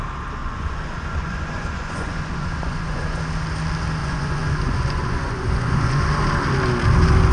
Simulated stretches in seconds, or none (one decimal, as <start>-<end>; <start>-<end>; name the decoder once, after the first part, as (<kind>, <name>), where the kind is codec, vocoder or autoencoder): 0.4-3.2 (vocoder, Vocos); 4.0-6.1